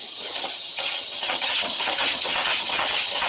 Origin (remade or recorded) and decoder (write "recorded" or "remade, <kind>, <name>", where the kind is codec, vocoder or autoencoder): remade, vocoder, HiFi-GAN